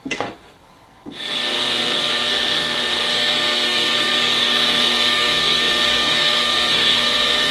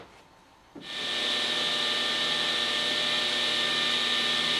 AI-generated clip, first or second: first